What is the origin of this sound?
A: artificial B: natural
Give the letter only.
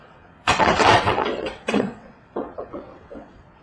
A